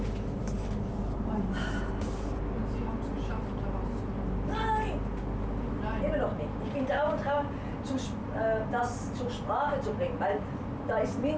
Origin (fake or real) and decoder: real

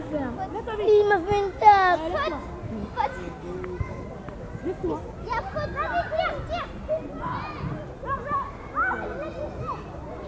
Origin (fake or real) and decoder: real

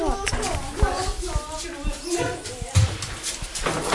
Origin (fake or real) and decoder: real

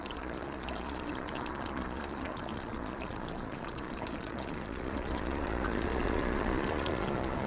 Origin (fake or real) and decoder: fake, vocoder, Vocos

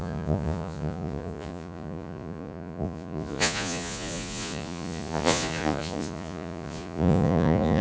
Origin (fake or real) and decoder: fake, vocoder, Vocos